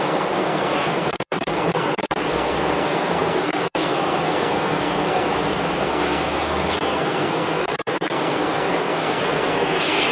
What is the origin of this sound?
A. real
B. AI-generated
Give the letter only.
B